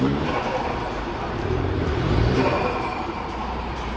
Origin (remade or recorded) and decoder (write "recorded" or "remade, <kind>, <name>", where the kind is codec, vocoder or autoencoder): remade, vocoder, BigVGAN v2